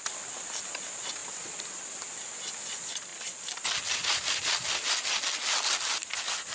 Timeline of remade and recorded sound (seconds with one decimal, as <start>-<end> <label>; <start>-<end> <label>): 0.0-6.5 recorded